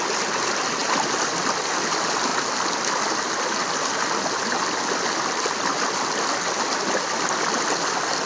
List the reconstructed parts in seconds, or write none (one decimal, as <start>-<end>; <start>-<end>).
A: none